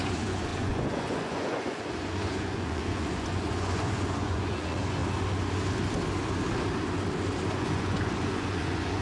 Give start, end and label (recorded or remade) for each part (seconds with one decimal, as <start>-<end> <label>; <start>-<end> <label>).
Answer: 0.0-5.0 remade; 5.0-7.5 recorded; 7.5-9.0 remade